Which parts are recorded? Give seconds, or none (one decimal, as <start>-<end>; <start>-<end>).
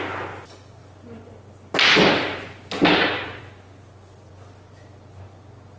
0.0-5.8